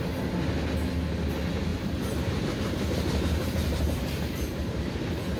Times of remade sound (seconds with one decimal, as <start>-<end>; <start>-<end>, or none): 1.7-4.9